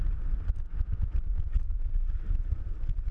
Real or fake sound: real